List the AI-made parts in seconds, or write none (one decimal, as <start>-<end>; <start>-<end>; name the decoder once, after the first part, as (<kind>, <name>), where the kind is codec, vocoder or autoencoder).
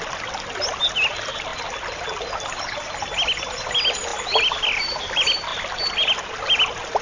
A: none